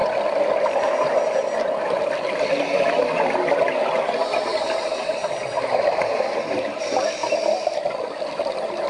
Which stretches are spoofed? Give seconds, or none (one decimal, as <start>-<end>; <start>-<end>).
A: none